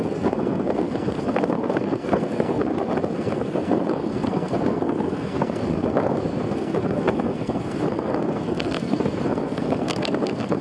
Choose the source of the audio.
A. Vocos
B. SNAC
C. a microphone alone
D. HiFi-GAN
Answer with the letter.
B